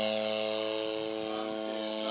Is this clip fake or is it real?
real